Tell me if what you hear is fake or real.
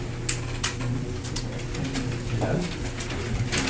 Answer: real